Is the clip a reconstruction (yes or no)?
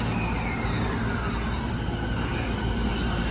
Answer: no